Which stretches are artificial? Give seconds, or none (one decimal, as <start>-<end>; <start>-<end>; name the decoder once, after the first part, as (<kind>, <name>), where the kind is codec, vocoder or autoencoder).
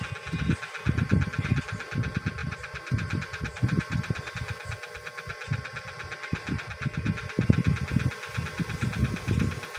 2.4-4.3 (vocoder, BigVGAN v2)